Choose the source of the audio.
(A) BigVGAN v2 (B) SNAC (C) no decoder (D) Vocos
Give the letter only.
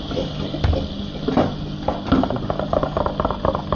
C